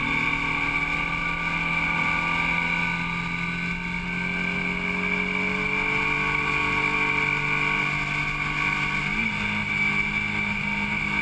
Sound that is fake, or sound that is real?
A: real